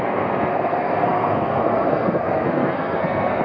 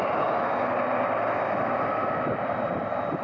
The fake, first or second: first